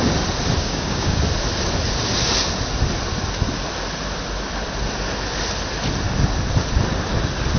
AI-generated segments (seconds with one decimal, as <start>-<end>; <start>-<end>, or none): 0.6-1.2